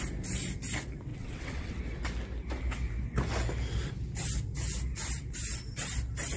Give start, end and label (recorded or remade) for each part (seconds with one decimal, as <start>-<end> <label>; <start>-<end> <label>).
0.0-1.1 recorded; 1.1-1.8 remade; 1.8-6.4 recorded